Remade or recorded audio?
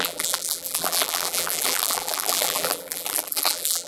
remade